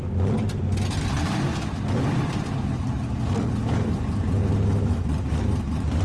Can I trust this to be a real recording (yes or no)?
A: yes